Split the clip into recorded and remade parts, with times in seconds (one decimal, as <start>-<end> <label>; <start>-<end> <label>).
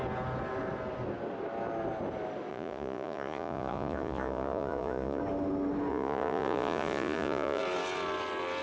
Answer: 0.0-2.5 recorded; 2.5-5.2 remade; 5.2-5.9 recorded; 5.9-7.6 remade; 7.6-8.6 recorded